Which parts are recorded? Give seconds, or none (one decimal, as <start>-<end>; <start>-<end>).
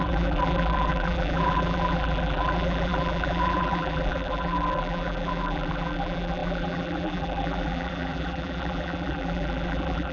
none